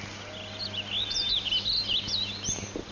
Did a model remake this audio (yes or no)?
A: no